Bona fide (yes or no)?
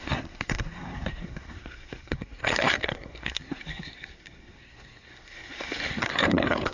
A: no